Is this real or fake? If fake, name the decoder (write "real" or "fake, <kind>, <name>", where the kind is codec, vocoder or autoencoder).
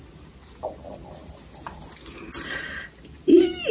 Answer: real